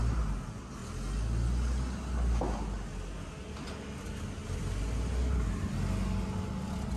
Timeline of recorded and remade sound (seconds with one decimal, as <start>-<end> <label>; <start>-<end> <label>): 0.0-7.0 recorded

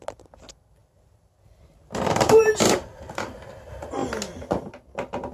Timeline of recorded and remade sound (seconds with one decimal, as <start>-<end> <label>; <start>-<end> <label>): 0.0-0.8 recorded; 0.8-3.5 remade; 3.5-5.3 recorded

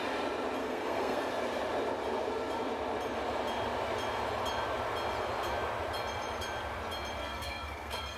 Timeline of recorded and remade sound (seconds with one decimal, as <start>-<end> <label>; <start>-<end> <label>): 0.0-0.6 recorded; 0.6-1.3 remade; 1.3-7.2 recorded; 7.2-8.2 remade

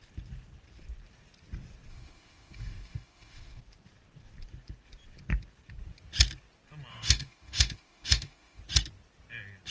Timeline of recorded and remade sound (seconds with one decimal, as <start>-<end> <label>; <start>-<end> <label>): 0.0-1.9 recorded; 1.9-3.6 remade; 3.6-6.9 recorded; 6.9-8.6 remade; 8.6-9.7 recorded

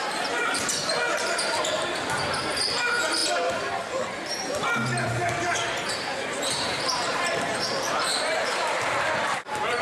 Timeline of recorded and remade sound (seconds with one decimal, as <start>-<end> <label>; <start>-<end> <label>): 0.0-3.2 remade; 3.2-5.9 recorded; 5.9-9.8 remade

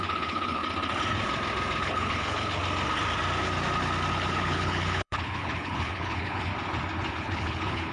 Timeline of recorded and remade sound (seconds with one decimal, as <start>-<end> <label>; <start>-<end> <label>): 0.0-0.6 remade; 0.6-1.8 recorded; 1.8-2.6 remade; 2.6-4.1 recorded; 4.1-6.5 remade; 6.5-7.1 recorded; 7.1-7.9 remade